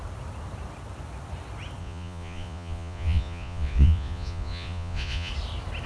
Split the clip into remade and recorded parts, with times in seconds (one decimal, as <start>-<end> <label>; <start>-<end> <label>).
0.0-1.8 recorded; 1.8-5.3 remade; 5.3-5.9 recorded